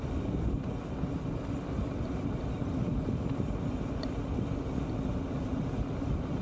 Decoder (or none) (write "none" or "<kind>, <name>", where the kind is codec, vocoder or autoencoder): none